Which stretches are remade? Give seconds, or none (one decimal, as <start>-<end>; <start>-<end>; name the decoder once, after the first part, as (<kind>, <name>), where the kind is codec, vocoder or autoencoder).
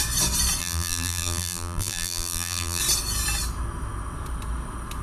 0.6-2.8 (vocoder, BigVGAN v2)